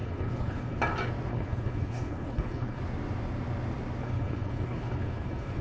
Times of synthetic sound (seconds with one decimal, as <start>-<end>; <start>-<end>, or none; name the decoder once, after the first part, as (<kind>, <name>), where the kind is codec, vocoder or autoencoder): 0.0-0.8 (codec, HILCodec); 1.3-2.8; 4.0-5.6